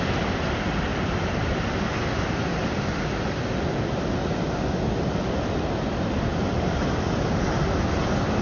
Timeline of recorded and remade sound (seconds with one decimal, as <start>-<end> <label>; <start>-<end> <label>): 0.0-8.4 recorded